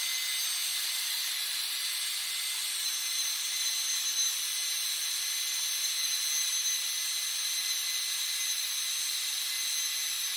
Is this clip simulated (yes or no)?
no